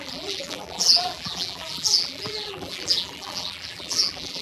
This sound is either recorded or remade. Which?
remade